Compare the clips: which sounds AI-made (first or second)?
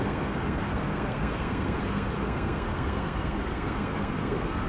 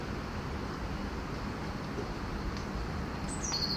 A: first